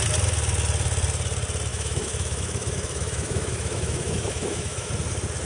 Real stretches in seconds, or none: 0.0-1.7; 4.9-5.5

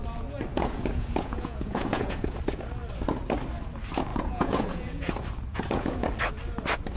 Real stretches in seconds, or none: 0.0-0.5; 2.4-4.1; 5.1-5.5; 6.1-7.0

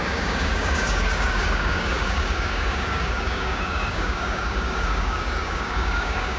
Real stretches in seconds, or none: none

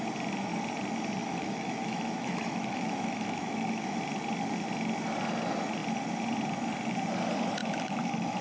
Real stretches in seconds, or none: 0.0-1.2; 4.0-7.6

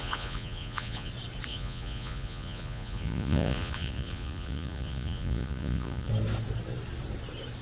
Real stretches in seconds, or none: 1.1-1.5; 6.1-7.6

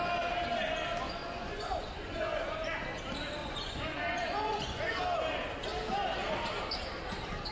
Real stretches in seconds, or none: 0.0-1.2; 2.7-3.4; 5.0-7.5

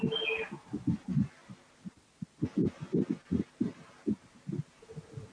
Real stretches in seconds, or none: 0.0-5.3